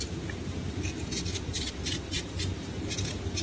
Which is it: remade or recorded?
recorded